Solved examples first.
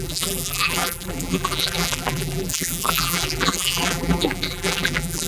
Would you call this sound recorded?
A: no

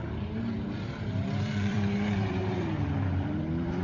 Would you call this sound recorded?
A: no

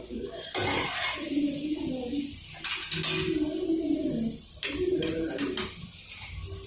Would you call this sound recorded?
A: yes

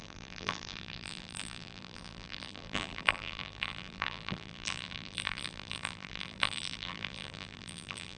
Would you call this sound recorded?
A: no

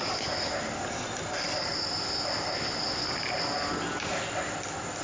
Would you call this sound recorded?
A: yes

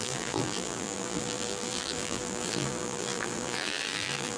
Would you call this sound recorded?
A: no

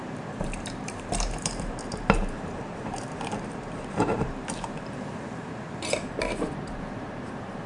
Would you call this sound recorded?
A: no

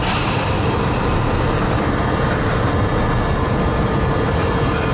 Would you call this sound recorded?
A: no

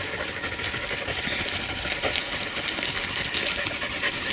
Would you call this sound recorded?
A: yes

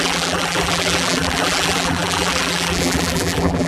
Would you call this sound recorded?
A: no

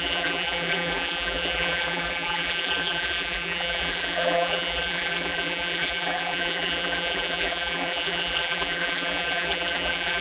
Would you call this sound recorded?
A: no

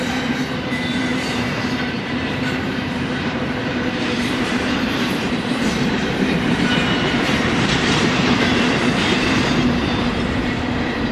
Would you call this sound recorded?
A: no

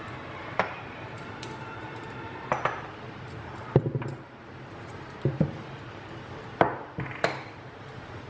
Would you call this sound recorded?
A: no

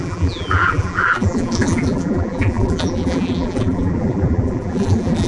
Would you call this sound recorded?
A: no